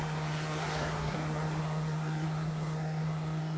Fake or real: fake